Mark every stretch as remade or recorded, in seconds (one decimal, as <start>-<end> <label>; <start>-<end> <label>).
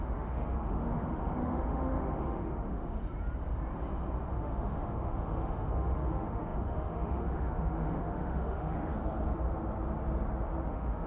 0.0-3.0 remade; 3.0-4.3 recorded; 4.3-8.9 remade; 8.9-10.7 recorded; 10.7-11.1 remade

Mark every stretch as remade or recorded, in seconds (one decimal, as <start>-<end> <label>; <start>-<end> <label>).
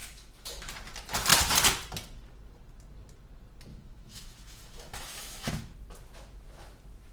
0.0-0.7 remade; 0.7-3.7 recorded; 3.7-5.7 remade; 5.7-7.1 recorded